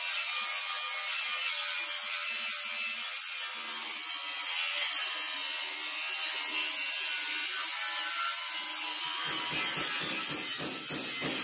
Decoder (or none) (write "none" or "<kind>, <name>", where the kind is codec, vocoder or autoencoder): none